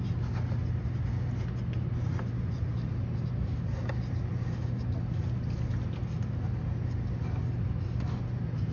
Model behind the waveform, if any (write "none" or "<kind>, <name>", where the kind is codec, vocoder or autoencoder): none